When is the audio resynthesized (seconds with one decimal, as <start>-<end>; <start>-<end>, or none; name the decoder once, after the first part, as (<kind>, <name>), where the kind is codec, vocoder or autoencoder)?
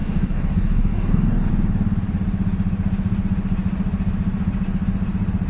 0.0-1.5 (codec, DAC)